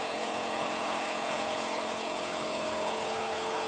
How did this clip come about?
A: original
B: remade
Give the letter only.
B